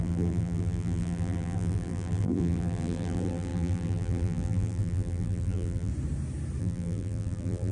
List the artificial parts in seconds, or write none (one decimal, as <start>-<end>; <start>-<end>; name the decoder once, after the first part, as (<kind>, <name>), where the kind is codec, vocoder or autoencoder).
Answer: 0.0-5.9 (vocoder, BigVGAN v2); 6.6-7.7